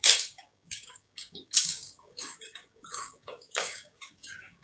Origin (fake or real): fake